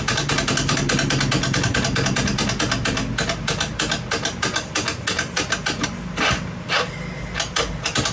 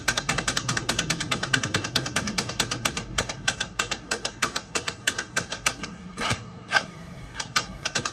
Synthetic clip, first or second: second